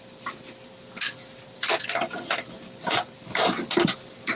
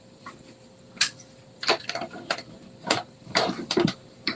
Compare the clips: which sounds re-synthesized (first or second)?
second